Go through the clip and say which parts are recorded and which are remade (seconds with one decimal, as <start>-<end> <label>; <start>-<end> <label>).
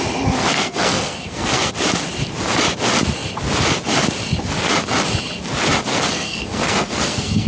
0.0-0.4 recorded; 0.4-1.7 remade; 1.7-5.9 recorded; 5.9-7.5 remade